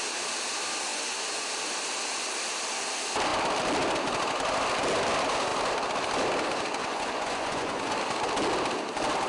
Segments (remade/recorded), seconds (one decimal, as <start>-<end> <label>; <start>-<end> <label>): 0.0-0.9 recorded; 0.9-1.5 remade; 1.5-6.8 recorded; 6.8-7.9 remade; 7.9-9.3 recorded